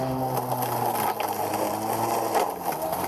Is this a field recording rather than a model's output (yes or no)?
yes